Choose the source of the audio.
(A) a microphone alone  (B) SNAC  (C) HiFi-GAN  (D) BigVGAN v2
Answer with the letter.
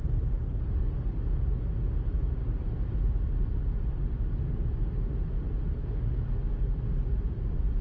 A